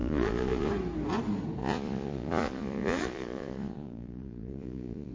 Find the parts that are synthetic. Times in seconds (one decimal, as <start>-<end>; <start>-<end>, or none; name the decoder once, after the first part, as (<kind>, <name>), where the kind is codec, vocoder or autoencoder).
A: 0.0-0.7 (vocoder, Vocos); 1.6-5.1